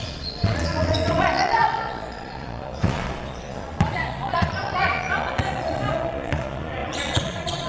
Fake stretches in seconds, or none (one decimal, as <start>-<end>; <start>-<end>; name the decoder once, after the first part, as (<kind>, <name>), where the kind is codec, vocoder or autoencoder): 0.0-7.7 (vocoder, Vocos)